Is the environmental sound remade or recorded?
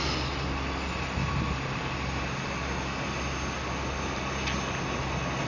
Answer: recorded